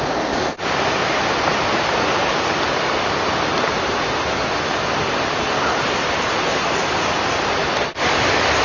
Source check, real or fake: real